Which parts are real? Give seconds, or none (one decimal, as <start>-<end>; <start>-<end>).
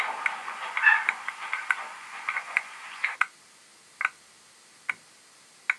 0.0-0.4; 3.3-5.8